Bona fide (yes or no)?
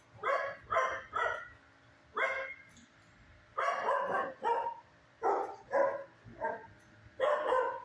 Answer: yes